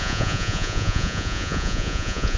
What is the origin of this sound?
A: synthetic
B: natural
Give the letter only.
A